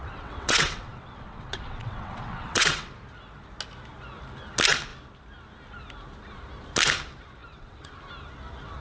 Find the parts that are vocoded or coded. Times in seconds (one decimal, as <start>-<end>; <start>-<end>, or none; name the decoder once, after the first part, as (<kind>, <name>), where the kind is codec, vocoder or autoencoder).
0.0-2.9 (vocoder, WaveNeXt); 7.4-8.0